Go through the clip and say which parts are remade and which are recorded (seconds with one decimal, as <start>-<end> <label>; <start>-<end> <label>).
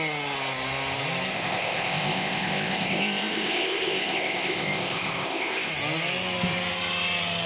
0.0-1.3 recorded; 1.3-5.7 remade; 5.7-7.5 recorded